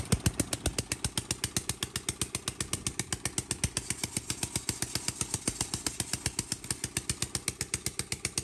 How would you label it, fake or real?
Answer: real